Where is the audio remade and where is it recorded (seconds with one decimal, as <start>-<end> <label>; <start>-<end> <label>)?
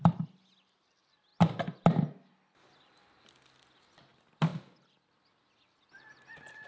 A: 0.0-6.7 recorded